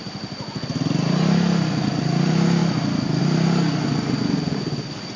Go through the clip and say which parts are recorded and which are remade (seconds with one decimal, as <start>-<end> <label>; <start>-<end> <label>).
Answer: 0.0-5.2 recorded